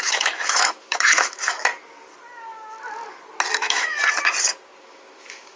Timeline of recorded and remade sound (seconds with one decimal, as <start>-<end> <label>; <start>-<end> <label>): 0.0-1.7 remade; 1.7-3.5 recorded; 3.5-4.0 remade; 4.0-4.8 recorded; 4.8-5.6 remade